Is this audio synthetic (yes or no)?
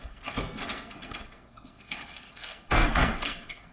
yes